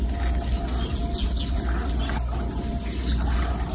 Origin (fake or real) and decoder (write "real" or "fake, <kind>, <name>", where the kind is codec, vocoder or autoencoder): real